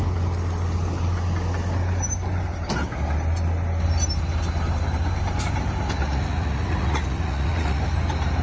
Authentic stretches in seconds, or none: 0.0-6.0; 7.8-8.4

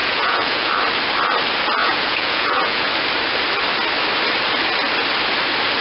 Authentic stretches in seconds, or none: 0.7-1.8; 2.9-5.8